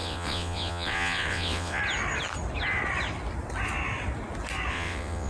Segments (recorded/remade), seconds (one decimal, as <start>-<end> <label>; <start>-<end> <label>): 0.0-1.8 remade; 1.8-4.7 recorded; 4.7-5.3 remade